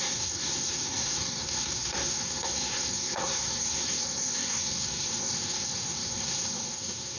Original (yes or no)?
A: no